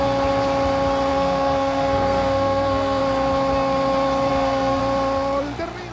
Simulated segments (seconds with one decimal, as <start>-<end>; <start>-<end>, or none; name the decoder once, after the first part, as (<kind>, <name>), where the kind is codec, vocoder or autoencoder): 1.1-3.0 (codec, SNAC); 4.3-4.8